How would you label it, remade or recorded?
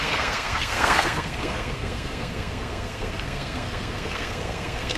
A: remade